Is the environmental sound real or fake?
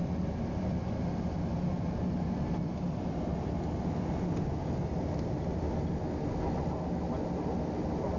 real